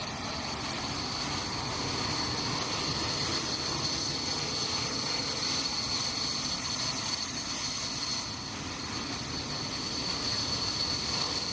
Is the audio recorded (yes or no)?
yes